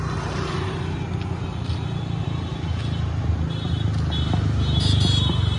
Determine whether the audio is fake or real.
real